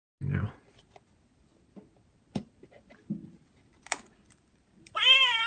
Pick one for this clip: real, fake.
real